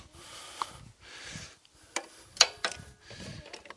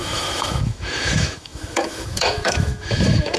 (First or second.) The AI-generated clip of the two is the second